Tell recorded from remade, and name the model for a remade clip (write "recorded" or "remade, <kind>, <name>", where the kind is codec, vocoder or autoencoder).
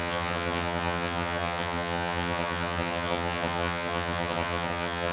remade, vocoder, HiFi-GAN